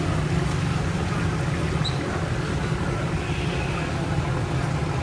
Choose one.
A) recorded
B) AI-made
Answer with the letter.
A